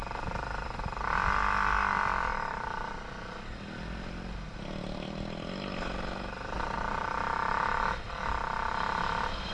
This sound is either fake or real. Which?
real